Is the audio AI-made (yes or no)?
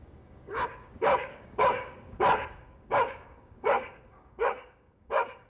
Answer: yes